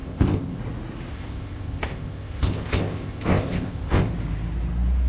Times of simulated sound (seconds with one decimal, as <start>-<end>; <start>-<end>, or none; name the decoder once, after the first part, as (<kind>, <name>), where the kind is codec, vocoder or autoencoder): 0.0-0.6 (codec, ZipCodec); 1.1-4.1